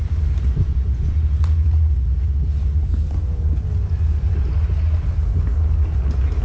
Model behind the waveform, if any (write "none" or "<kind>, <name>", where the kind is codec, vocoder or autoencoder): none